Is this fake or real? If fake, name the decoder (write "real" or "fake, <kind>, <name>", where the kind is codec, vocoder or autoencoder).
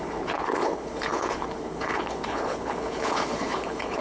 fake, codec, HILCodec